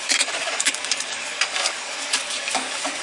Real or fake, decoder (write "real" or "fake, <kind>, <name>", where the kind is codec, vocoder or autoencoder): fake, codec, DAC